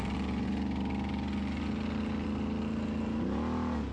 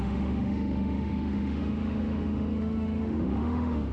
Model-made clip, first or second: second